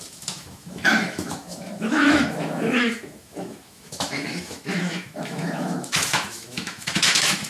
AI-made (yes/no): yes